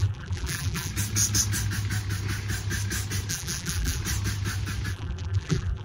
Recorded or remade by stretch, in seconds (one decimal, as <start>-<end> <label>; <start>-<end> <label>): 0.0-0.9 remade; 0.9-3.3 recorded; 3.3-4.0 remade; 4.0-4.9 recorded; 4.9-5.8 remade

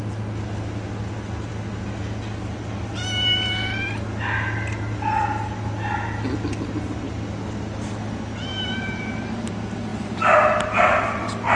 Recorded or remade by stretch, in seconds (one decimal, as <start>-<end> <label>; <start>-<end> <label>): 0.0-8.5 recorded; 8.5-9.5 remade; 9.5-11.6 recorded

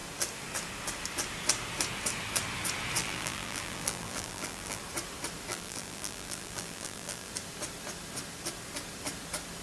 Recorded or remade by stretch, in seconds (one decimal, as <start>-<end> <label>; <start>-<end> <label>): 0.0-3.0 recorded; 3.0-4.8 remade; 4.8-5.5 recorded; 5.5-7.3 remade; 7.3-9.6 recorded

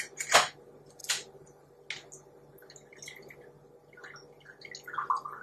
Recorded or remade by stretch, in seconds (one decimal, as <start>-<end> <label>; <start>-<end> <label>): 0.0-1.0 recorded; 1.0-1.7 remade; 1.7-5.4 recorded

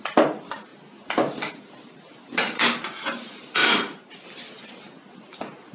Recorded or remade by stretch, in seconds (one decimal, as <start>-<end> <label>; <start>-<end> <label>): 0.0-3.6 recorded; 3.6-4.1 remade; 4.1-5.7 recorded